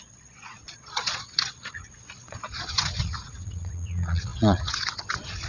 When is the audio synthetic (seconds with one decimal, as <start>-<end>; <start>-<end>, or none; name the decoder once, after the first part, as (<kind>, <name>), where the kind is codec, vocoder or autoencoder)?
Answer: 0.0-5.5 (vocoder, Vocos)